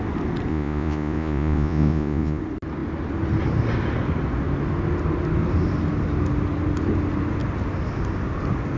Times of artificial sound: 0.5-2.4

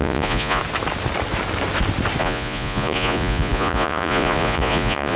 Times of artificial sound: 0.0-0.6; 2.2-5.2